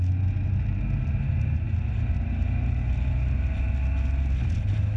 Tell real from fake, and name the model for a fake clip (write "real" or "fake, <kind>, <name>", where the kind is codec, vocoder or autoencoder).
real